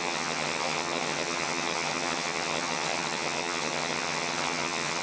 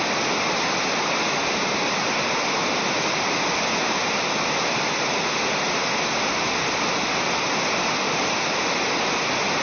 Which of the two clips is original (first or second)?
second